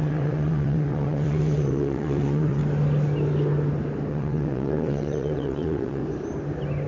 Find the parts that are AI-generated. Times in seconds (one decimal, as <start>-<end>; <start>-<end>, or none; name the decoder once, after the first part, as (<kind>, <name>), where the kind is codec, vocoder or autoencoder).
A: 0.0-2.6 (vocoder, WaveNeXt); 4.1-6.0